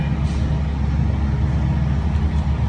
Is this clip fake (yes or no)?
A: no